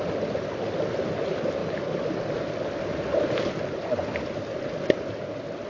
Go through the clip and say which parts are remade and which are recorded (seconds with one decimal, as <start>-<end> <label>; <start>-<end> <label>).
0.0-5.7 recorded